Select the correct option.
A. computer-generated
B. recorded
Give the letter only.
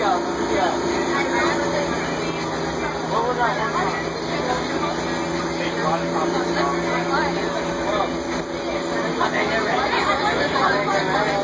B